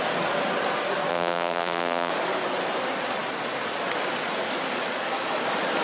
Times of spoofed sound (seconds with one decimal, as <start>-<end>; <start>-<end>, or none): 1.1-2.1